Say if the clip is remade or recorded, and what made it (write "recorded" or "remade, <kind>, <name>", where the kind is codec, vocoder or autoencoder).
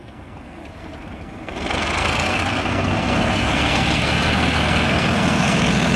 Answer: remade, codec, SNAC